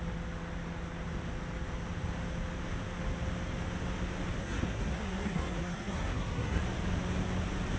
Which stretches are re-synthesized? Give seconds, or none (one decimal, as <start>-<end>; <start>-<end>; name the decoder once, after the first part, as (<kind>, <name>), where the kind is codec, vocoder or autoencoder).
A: 4.4-6.6 (codec, SNAC)